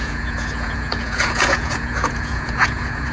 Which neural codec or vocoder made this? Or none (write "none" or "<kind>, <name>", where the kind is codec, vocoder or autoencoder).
vocoder, Vocos